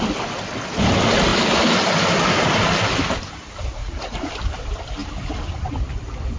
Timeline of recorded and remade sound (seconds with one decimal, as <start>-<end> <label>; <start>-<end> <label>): 0.0-3.8 recorded; 3.8-4.3 remade; 4.3-6.4 recorded